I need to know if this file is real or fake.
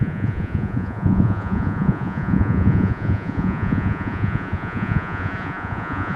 fake